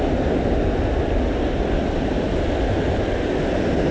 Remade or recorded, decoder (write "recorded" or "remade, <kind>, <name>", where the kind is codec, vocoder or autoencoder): recorded